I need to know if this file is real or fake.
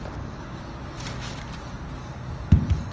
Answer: real